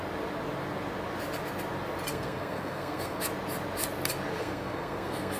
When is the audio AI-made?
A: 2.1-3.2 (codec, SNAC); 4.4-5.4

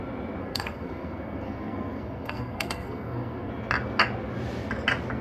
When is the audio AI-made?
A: 0.4-3.5 (codec, SNAC)